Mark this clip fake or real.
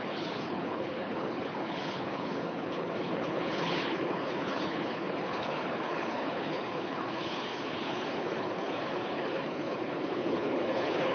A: fake